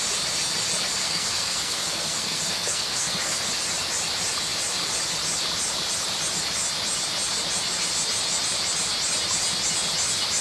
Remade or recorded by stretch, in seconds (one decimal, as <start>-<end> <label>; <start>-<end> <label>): 0.0-1.0 recorded; 1.0-3.4 remade; 3.4-10.4 recorded

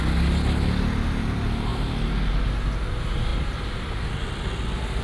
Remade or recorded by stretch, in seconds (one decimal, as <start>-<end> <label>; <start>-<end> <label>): 0.0-5.0 recorded

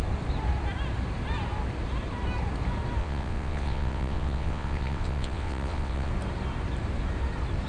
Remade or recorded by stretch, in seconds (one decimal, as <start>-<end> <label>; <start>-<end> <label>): 0.0-3.0 recorded; 3.0-6.1 remade; 6.1-7.7 recorded

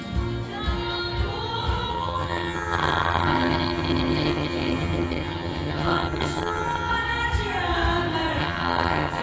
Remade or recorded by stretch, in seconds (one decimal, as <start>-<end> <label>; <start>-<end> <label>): 0.0-1.9 recorded; 1.9-6.9 remade; 6.9-8.4 recorded; 8.4-9.2 remade

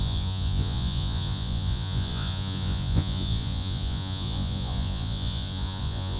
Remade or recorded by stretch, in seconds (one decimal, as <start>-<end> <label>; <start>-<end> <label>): 0.0-6.2 remade

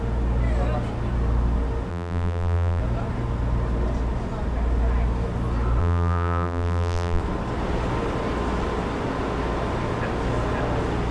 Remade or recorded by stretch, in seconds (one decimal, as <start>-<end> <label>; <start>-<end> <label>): 0.0-1.9 recorded; 1.9-2.8 remade; 2.8-5.8 recorded; 5.8-7.2 remade; 7.2-11.1 recorded

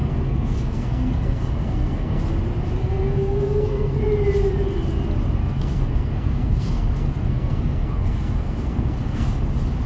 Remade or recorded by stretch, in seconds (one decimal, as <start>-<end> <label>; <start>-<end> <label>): 0.0-2.2 remade; 2.2-2.8 recorded; 2.8-4.0 remade; 4.0-5.4 recorded; 5.4-9.4 remade; 9.4-9.9 recorded

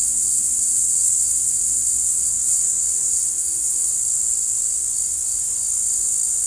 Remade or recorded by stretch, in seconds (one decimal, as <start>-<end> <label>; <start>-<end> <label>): 0.0-3.9 remade; 3.9-6.5 recorded